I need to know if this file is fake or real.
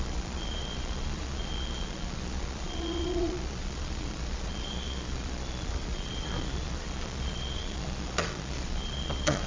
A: fake